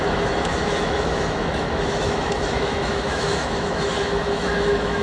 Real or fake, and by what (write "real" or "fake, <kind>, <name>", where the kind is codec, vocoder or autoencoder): fake, autoencoder, DAC-VAE